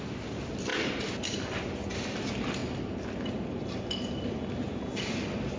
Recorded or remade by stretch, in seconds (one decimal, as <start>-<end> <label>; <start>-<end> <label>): 0.0-5.6 recorded